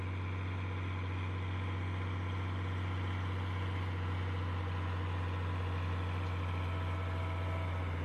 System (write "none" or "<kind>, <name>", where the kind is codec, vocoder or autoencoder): none